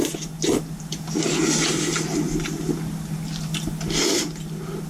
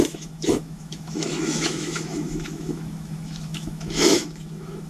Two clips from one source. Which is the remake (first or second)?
second